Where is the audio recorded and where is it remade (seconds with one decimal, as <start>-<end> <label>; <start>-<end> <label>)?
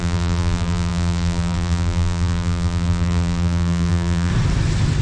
0.0-4.3 remade; 4.3-5.0 recorded